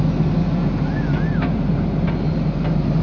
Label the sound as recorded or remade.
recorded